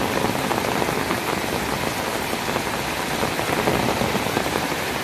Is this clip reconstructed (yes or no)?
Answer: no